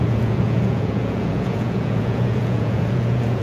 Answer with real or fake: fake